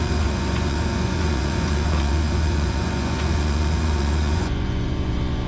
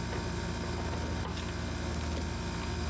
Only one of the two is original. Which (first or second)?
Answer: second